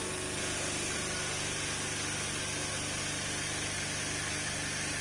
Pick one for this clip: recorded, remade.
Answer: recorded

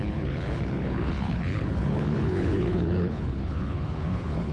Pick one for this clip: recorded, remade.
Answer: remade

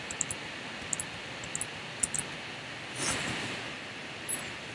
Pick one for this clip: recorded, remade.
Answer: recorded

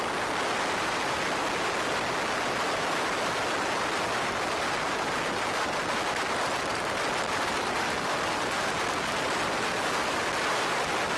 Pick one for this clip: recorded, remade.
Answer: recorded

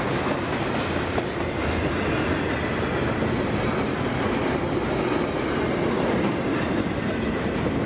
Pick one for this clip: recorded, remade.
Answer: recorded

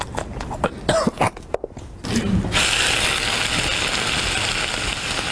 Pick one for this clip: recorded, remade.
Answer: recorded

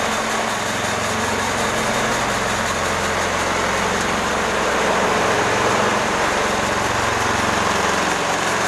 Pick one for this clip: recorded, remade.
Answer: recorded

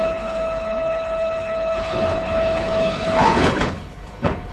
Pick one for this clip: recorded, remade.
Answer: remade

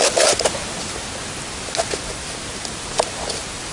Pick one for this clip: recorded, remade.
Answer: recorded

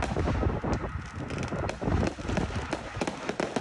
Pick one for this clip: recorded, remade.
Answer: recorded